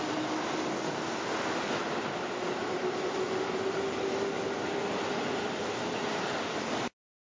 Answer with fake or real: real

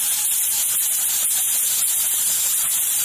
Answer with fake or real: real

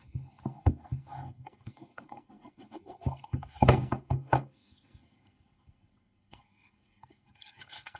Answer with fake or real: fake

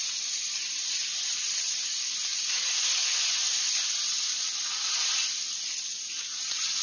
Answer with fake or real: real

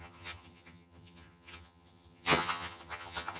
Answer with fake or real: fake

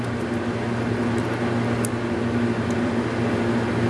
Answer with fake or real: real